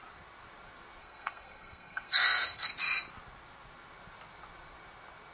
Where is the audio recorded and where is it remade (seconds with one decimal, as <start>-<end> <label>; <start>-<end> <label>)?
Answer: 0.0-1.0 recorded; 1.0-2.7 remade; 2.7-5.3 recorded